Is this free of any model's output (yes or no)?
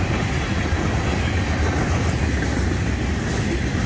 yes